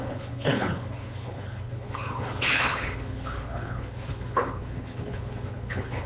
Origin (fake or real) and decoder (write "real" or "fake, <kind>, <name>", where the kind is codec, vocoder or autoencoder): fake, codec, HILCodec